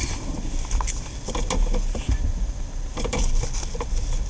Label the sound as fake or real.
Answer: real